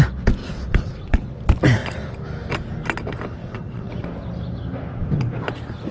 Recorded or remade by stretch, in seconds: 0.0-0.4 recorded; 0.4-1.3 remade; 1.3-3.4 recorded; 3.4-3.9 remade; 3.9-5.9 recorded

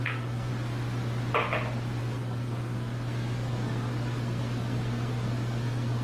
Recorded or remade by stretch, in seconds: 0.0-0.5 remade; 0.5-2.0 recorded; 2.0-6.0 remade

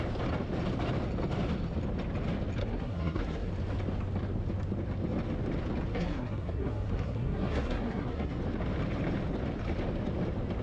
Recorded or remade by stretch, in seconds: 0.0-2.6 recorded; 2.6-3.5 remade; 3.5-5.9 recorded; 5.9-8.4 remade; 8.4-10.6 recorded

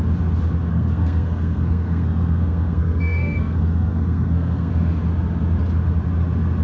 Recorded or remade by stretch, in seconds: 0.0-0.7 recorded; 0.7-4.7 remade; 4.7-6.6 recorded

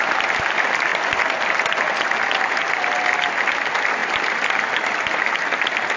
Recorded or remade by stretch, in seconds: 0.0-6.0 recorded

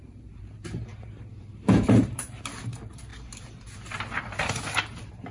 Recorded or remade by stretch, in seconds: 0.0-3.1 remade; 3.1-4.8 recorded; 4.8-5.3 remade

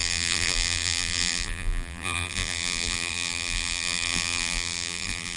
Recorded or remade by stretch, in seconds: 0.0-5.4 remade